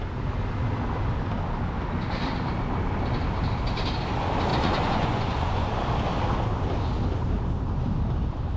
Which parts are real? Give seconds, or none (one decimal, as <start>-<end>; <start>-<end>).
0.0-4.5; 5.7-8.6